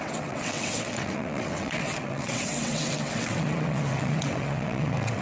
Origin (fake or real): fake